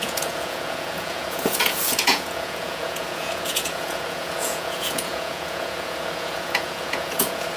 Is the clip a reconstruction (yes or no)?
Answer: yes